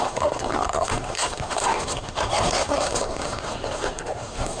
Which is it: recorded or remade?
remade